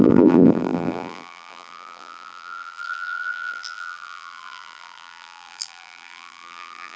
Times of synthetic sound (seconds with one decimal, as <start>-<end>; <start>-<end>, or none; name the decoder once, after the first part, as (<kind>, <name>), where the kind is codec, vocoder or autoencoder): 0.0-7.0 (vocoder, BigVGAN v2)